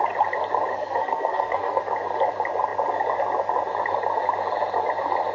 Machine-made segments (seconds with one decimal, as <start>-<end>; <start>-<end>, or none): 0.7-1.8